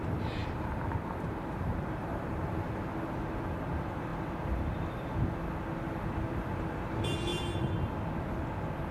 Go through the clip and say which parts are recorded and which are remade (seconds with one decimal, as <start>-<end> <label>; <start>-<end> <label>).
0.0-0.4 recorded; 0.4-2.5 remade; 2.5-8.9 recorded